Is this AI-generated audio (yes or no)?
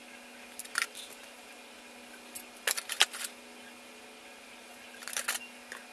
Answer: no